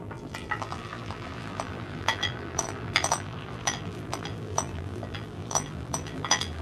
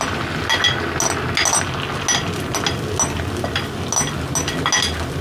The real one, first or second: second